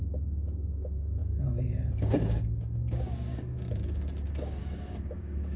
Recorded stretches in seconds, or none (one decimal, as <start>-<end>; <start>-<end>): none